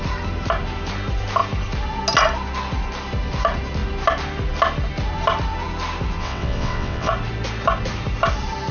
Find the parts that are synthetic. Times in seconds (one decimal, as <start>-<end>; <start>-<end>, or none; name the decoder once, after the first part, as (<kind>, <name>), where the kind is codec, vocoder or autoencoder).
6.2-7.1 (vocoder, WaveNeXt)

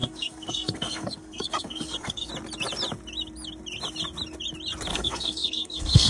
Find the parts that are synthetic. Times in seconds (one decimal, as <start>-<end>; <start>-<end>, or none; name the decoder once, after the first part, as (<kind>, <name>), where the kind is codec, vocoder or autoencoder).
0.0-2.3 (codec, SNAC); 4.9-6.1

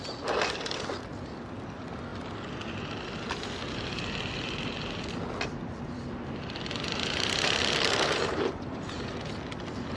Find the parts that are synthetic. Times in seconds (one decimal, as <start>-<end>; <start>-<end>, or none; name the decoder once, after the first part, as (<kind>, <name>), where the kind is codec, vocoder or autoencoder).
none

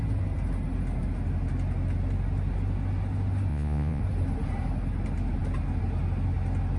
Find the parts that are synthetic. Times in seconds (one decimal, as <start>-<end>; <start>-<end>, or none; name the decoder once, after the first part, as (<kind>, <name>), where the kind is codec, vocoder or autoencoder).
3.5-4.0 (vocoder, Vocos)

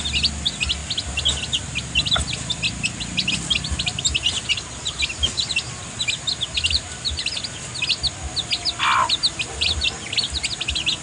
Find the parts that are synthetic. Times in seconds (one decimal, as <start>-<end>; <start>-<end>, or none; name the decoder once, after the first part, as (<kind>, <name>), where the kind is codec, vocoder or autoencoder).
none